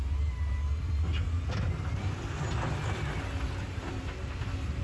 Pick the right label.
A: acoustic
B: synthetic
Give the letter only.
A